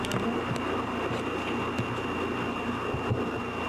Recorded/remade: recorded